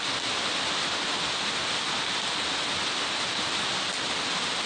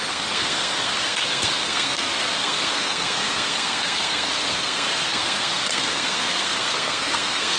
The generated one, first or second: second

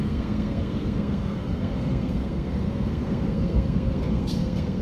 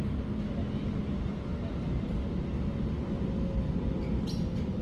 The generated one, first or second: first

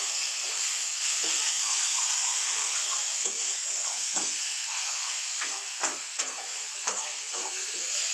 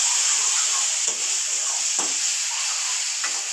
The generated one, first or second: first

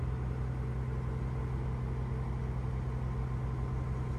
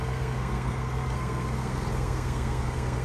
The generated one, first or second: second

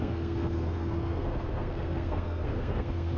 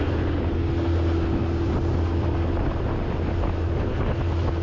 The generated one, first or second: first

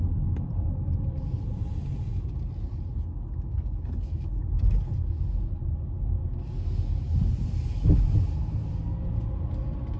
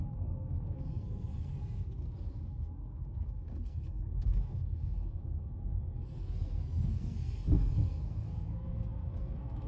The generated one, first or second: second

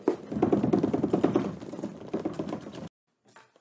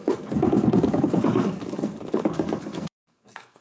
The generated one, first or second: second